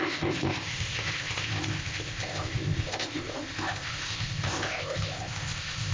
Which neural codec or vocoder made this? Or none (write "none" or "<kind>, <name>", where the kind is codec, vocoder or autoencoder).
codec, ZipCodec